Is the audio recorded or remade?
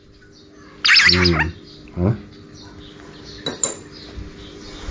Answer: recorded